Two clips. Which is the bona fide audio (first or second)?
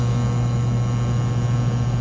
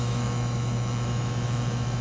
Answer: first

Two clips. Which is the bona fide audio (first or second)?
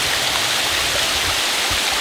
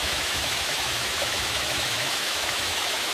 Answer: first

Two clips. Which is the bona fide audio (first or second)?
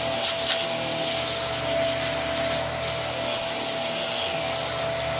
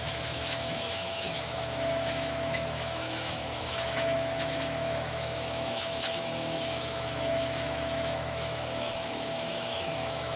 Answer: first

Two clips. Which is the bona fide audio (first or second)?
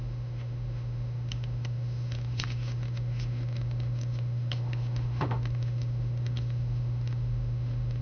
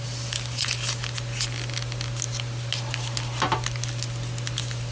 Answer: second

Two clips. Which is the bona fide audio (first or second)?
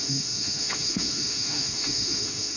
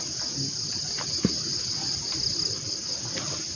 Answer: second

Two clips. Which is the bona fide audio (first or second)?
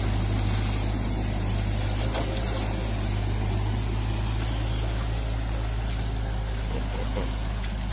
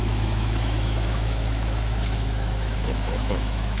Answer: first